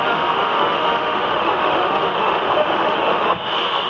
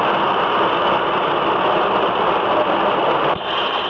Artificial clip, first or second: first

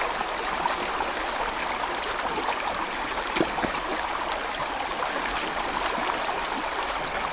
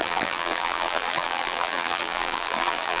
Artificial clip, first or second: second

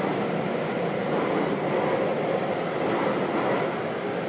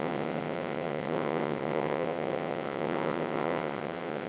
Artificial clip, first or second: second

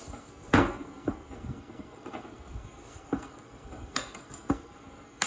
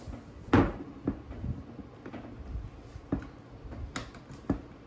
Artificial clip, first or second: first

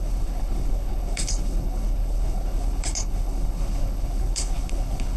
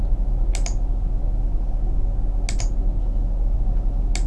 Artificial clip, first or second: first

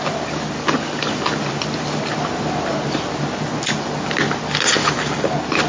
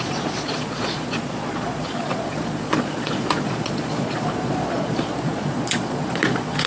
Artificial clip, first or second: second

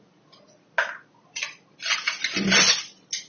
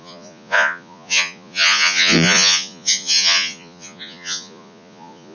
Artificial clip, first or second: second